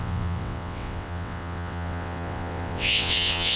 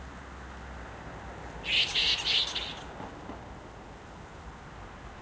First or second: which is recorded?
second